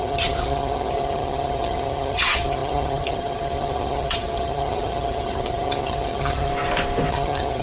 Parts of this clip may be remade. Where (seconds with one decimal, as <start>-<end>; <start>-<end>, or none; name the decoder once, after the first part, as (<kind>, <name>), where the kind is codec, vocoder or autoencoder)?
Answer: 0.0-6.5 (vocoder, HiFi-GAN); 7.1-7.6